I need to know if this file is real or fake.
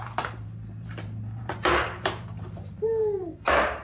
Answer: fake